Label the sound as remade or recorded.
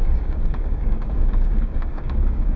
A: remade